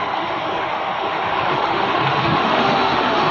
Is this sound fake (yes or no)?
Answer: yes